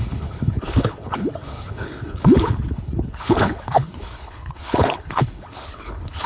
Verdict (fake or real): fake